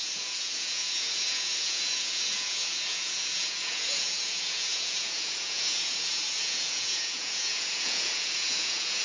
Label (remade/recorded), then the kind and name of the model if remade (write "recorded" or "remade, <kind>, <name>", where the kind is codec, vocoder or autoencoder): remade, vocoder, Vocos